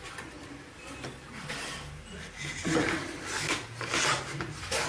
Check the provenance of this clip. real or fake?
real